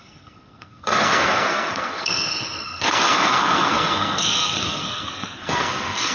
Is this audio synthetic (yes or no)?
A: yes